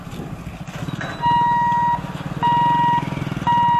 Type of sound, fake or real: real